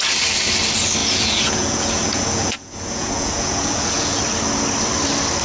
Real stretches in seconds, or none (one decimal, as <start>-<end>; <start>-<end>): 0.0-1.0; 4.2-5.4